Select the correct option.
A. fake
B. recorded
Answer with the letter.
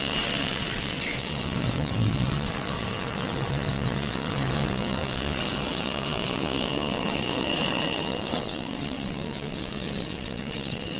A